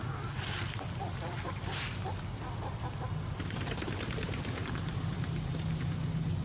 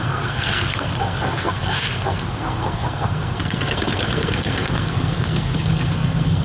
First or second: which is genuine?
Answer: first